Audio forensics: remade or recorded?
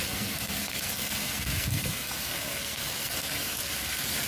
remade